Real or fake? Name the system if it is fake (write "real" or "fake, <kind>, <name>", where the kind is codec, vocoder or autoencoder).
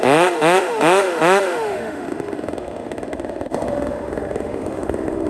fake, autoencoder, DAC-VAE